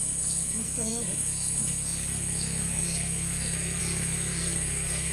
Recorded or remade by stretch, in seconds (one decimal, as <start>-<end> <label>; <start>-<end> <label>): 0.0-5.1 remade